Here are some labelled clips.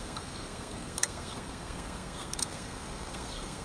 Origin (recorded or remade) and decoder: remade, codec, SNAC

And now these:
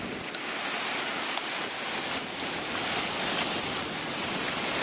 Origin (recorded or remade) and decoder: recorded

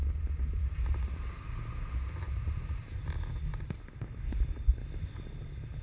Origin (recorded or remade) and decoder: recorded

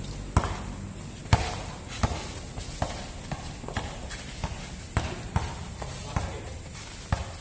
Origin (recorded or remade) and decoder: recorded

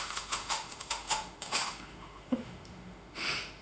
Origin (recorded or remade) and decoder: remade, autoencoder, DAC-VAE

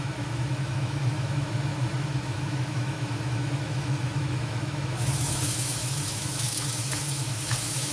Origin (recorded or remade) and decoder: remade, autoencoder, DAC-VAE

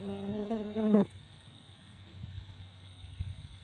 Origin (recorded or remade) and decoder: remade, codec, SNAC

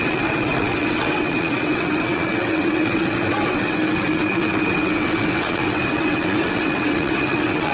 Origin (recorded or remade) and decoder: remade, vocoder, WaveNeXt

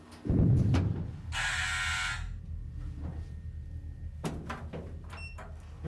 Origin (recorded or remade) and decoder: recorded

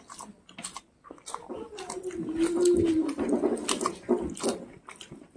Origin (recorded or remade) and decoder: recorded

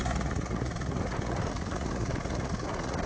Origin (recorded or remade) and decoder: remade, vocoder, Vocos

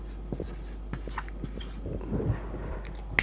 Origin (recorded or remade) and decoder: recorded